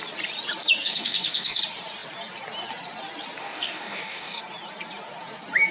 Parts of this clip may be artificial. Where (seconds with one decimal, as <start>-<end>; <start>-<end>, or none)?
0.8-1.6; 3.4-4.4